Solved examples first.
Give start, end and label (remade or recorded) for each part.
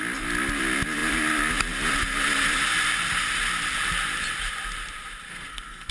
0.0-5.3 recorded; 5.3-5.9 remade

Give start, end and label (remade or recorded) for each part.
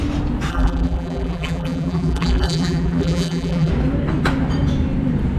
0.0-0.5 recorded; 0.5-3.7 remade; 3.7-5.4 recorded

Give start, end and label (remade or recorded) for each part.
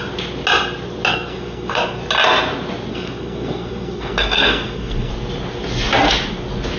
0.0-1.1 recorded; 1.1-2.0 remade; 2.0-2.9 recorded; 2.9-5.1 remade; 5.1-6.8 recorded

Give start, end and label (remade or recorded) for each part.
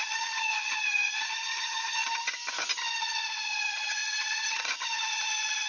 0.0-2.0 remade; 2.0-3.0 recorded; 3.0-5.7 remade